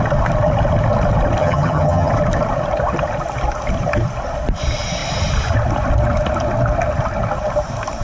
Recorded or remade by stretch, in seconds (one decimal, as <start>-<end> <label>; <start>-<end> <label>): 0.0-1.4 recorded; 1.4-2.1 remade; 2.1-8.0 recorded